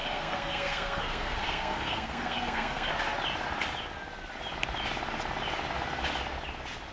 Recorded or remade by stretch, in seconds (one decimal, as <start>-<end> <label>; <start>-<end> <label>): 0.0-2.9 remade; 2.9-6.9 recorded